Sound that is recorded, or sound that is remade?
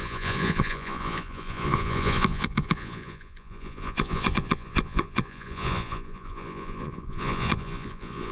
remade